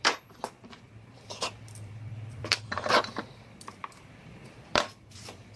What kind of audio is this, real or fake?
fake